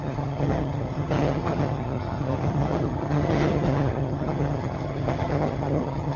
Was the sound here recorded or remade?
remade